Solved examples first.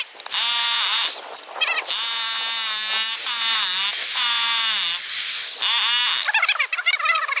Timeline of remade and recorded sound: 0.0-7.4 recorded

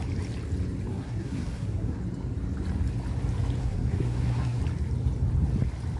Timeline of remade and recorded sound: 0.0-0.9 recorded; 0.9-2.0 remade; 2.0-3.6 recorded; 3.6-4.6 remade; 4.6-6.0 recorded